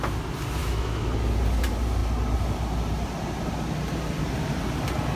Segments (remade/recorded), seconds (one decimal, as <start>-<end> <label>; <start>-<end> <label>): 0.0-0.6 recorded; 0.6-1.1 remade; 1.1-5.2 recorded